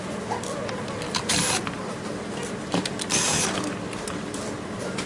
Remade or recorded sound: recorded